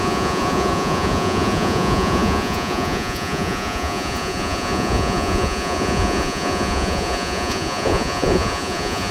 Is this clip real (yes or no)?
no